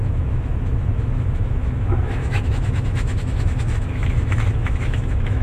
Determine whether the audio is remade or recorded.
remade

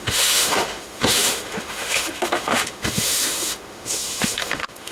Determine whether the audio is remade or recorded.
remade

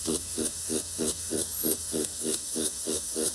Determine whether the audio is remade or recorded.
remade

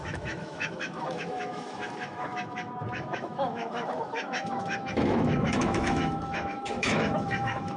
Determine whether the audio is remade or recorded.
remade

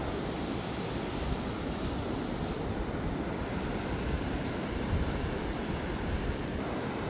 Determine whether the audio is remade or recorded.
recorded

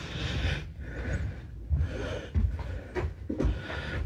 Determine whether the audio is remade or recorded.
recorded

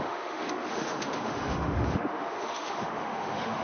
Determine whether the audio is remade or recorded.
remade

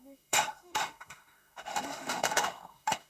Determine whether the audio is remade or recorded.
remade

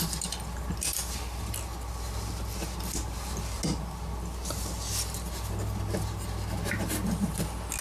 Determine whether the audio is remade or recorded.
recorded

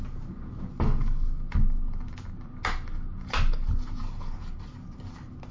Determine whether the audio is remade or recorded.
recorded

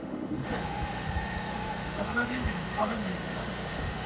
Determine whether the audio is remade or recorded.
remade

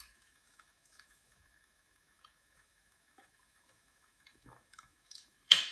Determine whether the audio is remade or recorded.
remade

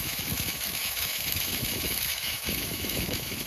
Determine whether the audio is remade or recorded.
remade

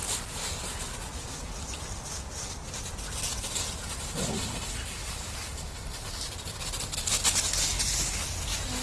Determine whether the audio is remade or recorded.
recorded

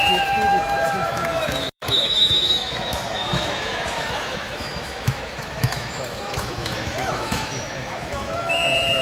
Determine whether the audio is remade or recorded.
remade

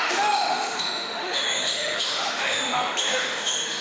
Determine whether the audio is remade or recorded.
remade